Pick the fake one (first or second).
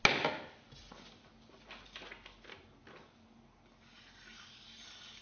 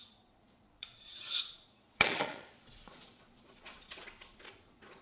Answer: second